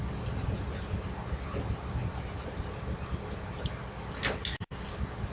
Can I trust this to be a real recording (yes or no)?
yes